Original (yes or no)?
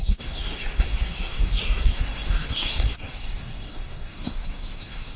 no